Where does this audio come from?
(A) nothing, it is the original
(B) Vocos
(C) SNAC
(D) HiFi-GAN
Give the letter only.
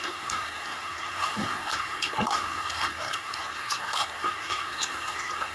C